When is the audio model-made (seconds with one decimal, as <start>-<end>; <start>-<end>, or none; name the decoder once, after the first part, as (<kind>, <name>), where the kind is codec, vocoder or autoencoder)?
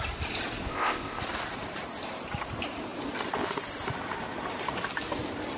0.7-1.2 (codec, ZipCodec)